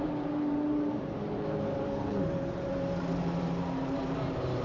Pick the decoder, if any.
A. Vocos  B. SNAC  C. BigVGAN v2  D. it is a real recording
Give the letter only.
C